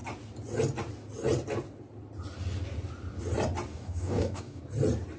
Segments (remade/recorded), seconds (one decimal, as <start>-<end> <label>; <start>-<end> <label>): 0.0-3.7 recorded; 3.7-4.6 remade; 4.6-5.2 recorded

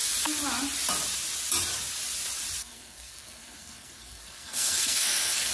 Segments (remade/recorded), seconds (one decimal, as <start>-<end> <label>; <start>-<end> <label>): 0.0-2.6 recorded; 2.6-5.5 remade

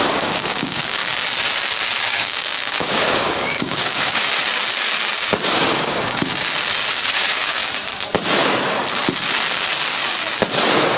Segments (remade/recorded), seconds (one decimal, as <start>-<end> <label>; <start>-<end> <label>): 0.0-1.0 remade; 1.0-2.0 recorded; 2.0-4.2 remade; 4.2-5.5 recorded; 5.5-6.3 remade; 6.3-6.9 recorded; 6.9-7.6 remade; 7.6-11.0 recorded

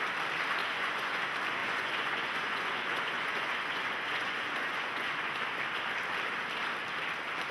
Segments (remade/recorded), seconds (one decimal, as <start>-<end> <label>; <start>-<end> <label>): 0.0-0.6 recorded; 0.6-1.2 remade; 1.2-1.6 recorded; 1.6-5.3 remade; 5.3-7.5 recorded

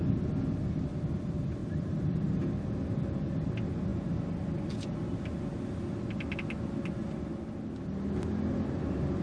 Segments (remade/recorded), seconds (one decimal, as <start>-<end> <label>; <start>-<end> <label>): 0.0-1.6 recorded; 1.6-2.4 remade; 2.4-9.2 recorded

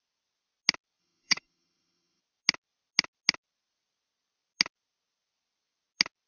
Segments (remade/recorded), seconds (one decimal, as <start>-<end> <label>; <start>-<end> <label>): 0.0-1.0 recorded; 1.0-2.2 remade; 2.2-6.3 recorded

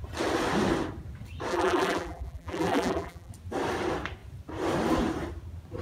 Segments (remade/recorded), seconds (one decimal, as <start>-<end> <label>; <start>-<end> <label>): 0.0-1.5 recorded; 1.5-3.3 remade; 3.3-5.8 recorded